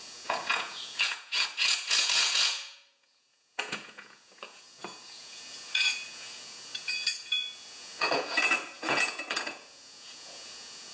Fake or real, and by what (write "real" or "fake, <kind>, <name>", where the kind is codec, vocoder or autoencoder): fake, vocoder, Vocos